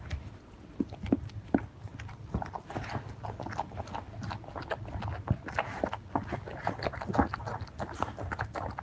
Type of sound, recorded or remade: recorded